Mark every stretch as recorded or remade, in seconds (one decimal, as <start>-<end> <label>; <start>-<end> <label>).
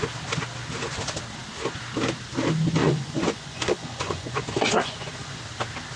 0.0-2.8 recorded; 2.8-5.4 remade; 5.4-6.0 recorded